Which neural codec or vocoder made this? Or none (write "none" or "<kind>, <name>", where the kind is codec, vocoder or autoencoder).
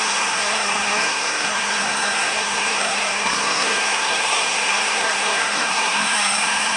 codec, SNAC